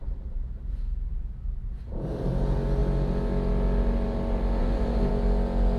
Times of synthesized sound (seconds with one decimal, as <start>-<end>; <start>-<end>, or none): 0.0-2.1; 4.6-5.1